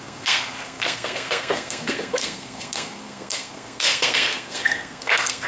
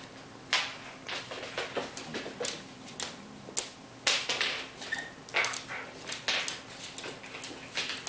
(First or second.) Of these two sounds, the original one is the second